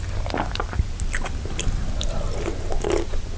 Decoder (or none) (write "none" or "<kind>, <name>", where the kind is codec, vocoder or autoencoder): none